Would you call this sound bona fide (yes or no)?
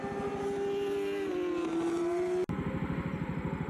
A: yes